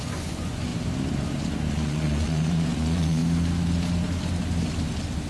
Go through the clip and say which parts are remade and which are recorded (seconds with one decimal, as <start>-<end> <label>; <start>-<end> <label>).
0.0-0.7 remade; 0.7-1.7 recorded; 1.7-3.2 remade; 3.2-5.3 recorded